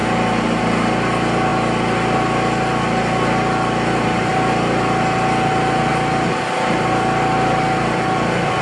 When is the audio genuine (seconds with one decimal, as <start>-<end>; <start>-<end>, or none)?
0.0-8.6